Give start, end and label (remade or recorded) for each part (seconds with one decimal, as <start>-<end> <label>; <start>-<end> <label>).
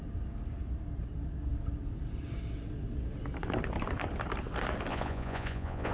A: 0.0-4.9 recorded; 4.9-5.9 remade